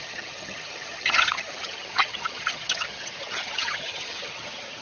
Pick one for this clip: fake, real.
fake